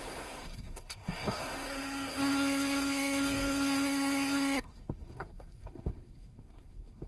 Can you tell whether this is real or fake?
fake